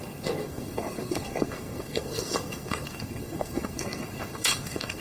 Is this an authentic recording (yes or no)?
no